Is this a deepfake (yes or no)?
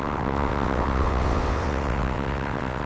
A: yes